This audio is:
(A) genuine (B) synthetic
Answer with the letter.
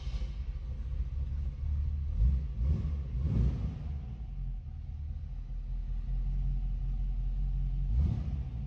A